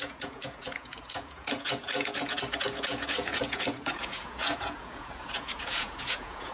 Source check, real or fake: fake